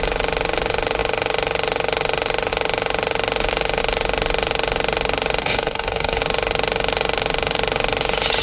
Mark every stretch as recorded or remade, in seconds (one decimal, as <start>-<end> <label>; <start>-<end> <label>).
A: 0.0-5.4 recorded; 5.4-6.2 remade; 6.2-8.4 recorded